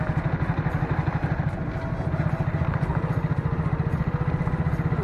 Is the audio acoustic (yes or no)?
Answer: yes